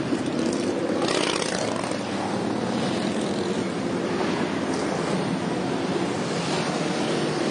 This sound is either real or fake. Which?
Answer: real